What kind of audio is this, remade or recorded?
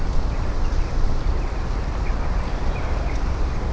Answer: recorded